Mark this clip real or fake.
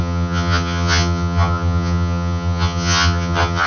fake